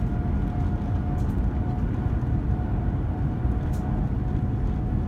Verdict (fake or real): real